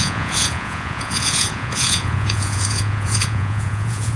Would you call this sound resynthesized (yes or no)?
yes